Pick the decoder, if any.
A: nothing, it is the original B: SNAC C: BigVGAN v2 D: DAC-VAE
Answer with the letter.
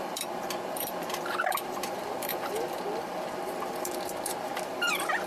C